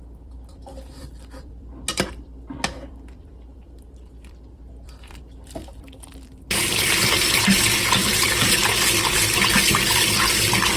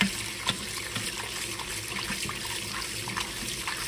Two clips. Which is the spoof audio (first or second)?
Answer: first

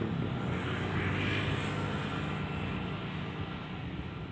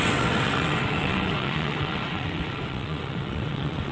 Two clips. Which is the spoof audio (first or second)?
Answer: second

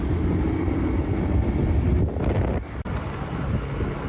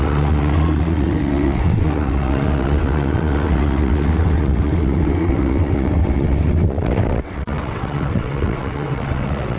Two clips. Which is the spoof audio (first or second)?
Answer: second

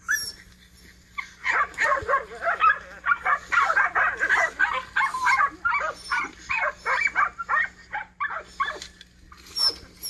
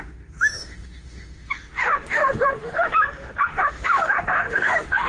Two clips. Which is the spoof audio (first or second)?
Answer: second